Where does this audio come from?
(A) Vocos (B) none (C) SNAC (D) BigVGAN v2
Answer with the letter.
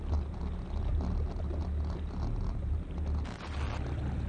B